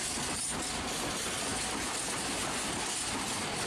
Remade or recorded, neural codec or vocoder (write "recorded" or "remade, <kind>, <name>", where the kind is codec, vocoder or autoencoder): recorded